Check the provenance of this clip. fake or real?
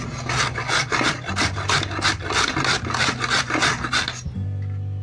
real